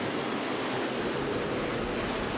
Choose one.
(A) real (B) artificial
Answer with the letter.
A